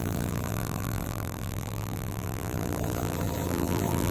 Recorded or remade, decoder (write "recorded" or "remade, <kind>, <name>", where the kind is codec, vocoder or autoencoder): remade, vocoder, BigVGAN v2